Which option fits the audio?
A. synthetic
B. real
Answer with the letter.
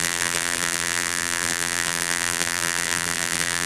A